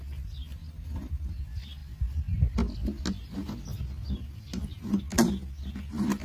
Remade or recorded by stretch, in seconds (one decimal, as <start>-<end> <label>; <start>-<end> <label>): 0.0-0.6 recorded; 0.6-1.3 remade; 1.3-6.2 recorded